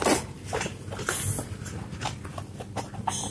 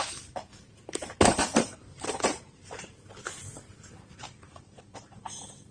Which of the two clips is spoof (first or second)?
second